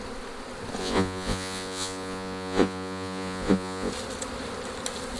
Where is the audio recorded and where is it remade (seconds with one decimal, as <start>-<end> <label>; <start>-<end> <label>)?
0.0-0.8 recorded; 0.8-3.9 remade; 3.9-5.2 recorded